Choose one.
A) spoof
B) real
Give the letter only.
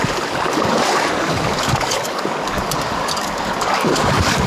A